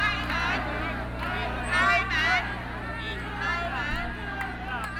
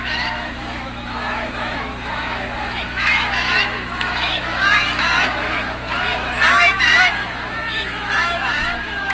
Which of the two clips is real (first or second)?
first